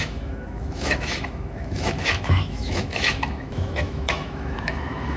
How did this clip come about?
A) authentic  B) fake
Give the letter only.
B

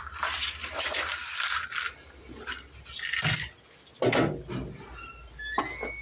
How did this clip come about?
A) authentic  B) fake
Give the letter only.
A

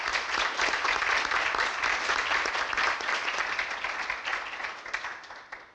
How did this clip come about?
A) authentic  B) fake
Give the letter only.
A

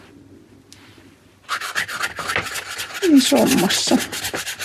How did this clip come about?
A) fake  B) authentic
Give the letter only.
B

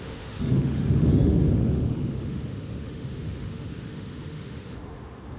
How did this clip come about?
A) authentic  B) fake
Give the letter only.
B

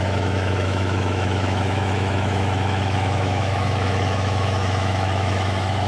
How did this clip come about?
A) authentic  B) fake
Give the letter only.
B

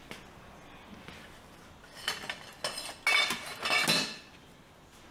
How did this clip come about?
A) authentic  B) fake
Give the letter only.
A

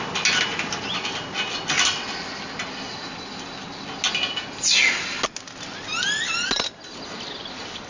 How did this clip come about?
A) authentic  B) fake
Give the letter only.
A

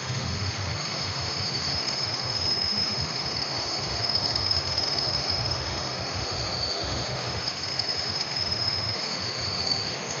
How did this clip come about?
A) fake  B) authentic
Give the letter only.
A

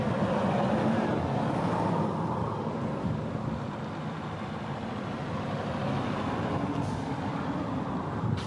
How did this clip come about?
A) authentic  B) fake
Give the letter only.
A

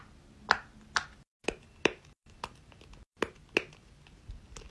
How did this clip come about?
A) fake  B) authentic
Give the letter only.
B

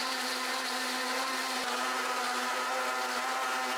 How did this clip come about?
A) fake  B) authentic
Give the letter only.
B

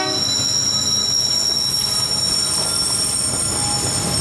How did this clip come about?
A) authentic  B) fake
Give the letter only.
A